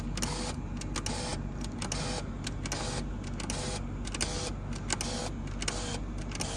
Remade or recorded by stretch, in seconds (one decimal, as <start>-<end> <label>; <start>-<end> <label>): 0.0-6.6 recorded